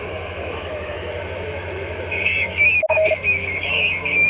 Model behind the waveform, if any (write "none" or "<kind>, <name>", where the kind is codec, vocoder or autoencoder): autoencoder, DAC-VAE